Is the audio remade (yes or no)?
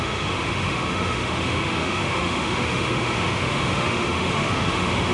yes